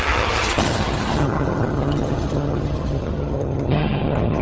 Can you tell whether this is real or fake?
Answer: fake